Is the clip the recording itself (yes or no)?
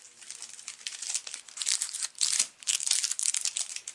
yes